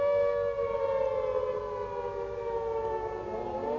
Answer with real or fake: real